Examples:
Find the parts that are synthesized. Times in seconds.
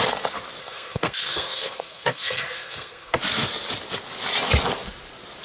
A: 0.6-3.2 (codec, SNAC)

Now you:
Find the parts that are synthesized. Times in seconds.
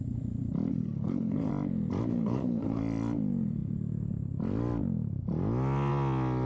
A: 0.7-1.5 (codec, HILCodec); 2.1-2.8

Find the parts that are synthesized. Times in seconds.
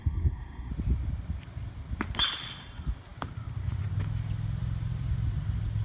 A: 0.0-0.7 (codec, SNAC)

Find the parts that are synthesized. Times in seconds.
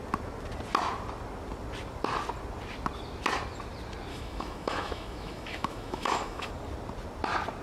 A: 4.1-6.5 (autoencoder, DAC-VAE)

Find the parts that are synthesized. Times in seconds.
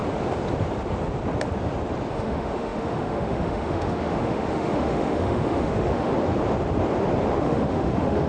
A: 2.1-6.1 (autoencoder, DAC-VAE); 7.4-8.3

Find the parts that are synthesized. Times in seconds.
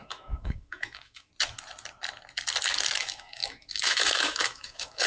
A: 0.0-1.3 (autoencoder, DAC-VAE); 3.0-5.1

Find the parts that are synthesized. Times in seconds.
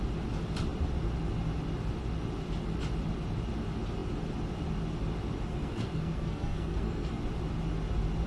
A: 5.5-7.2 (codec, SNAC)